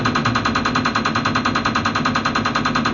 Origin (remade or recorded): recorded